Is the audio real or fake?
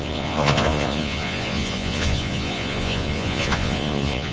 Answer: fake